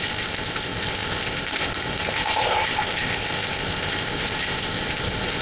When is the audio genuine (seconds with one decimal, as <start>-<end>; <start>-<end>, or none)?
none